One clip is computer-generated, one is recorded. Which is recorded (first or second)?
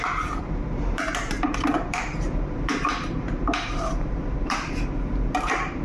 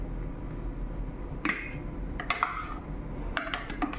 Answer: second